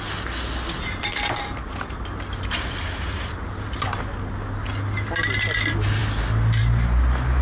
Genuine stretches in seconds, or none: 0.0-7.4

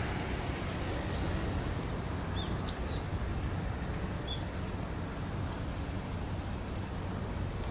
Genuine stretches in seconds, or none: 0.0-7.7

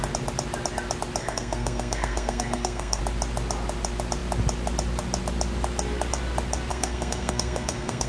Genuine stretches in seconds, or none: 0.0-1.2; 3.0-6.7

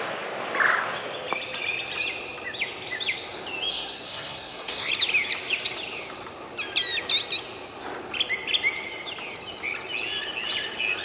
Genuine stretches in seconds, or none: 0.0-3.7; 4.9-11.0

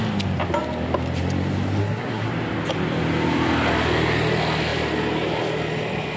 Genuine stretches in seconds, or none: 0.0-1.8; 2.3-6.2

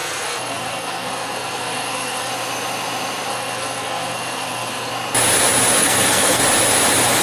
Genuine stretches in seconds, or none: 2.3-3.3; 4.9-5.8; 6.4-7.2

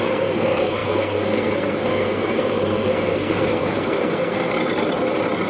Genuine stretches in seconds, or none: 4.5-5.5